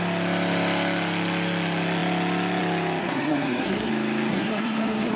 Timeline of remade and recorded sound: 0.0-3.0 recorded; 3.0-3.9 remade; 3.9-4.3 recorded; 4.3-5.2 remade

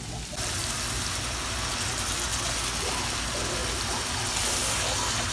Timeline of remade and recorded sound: 0.0-5.3 recorded

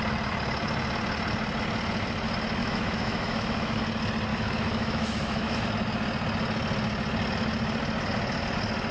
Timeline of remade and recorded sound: 0.0-2.6 recorded; 2.6-3.8 remade; 3.8-4.3 recorded; 4.3-5.7 remade; 5.7-8.9 recorded

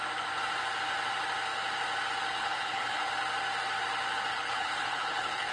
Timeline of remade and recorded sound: 0.0-2.4 recorded; 2.4-3.1 remade; 3.1-4.3 recorded; 4.3-5.5 remade

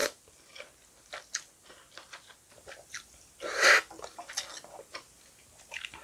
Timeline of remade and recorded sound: 0.0-6.0 recorded

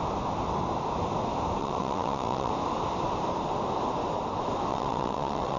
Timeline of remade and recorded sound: 0.0-1.6 recorded; 1.6-2.5 remade; 2.5-4.7 recorded; 4.7-5.6 remade

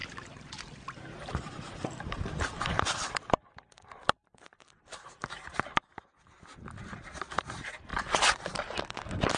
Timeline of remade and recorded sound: 0.0-5.9 remade; 5.9-7.3 recorded; 7.3-9.4 remade

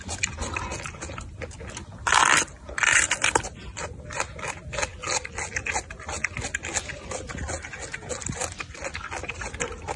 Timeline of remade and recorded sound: 0.0-2.9 recorded; 2.9-4.5 remade; 4.5-8.4 recorded; 8.4-9.4 remade; 9.4-10.0 recorded